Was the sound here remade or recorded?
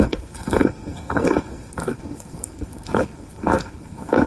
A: remade